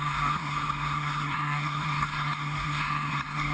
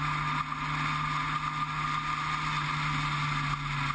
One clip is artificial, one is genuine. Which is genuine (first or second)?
second